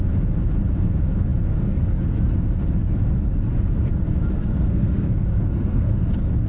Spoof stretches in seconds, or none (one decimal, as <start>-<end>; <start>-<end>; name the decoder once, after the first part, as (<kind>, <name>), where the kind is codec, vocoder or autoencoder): 4.5-6.1 (codec, SNAC)